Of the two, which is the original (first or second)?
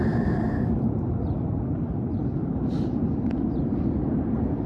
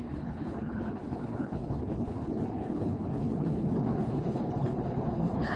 first